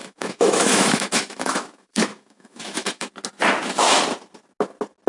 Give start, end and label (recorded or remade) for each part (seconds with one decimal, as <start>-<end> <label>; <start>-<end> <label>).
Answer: 0.0-3.1 remade; 3.1-5.1 recorded